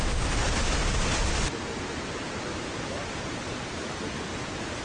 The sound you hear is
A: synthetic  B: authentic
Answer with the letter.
B